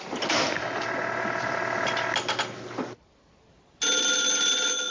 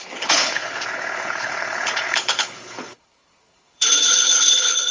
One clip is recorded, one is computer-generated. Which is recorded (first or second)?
first